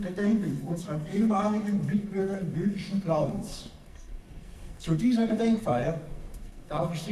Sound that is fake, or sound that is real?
fake